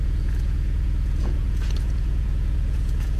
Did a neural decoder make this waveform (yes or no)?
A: yes